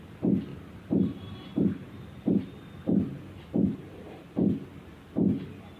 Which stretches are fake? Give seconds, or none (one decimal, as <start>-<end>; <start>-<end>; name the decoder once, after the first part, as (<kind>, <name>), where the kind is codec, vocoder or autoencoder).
0.5-2.4 (vocoder, BigVGAN v2)